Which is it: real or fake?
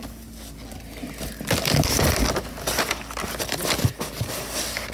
real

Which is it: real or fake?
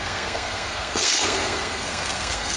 fake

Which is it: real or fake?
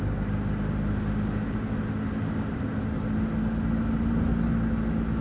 real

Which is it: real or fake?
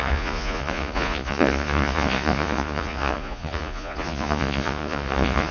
fake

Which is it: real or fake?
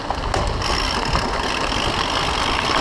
real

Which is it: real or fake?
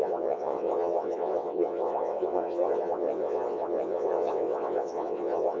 fake